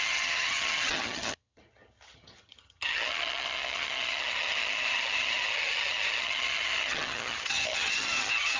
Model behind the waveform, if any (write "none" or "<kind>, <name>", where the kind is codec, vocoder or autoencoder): vocoder, HiFi-GAN